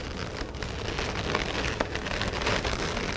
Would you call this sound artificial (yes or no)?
no